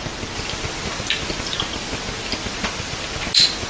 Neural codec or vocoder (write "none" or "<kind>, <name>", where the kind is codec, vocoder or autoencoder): none